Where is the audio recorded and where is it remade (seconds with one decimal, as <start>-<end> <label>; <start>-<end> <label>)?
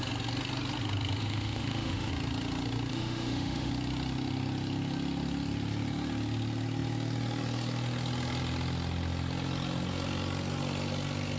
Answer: 0.0-1.2 recorded; 1.2-2.1 remade; 2.1-2.9 recorded; 2.9-3.7 remade; 3.7-11.4 recorded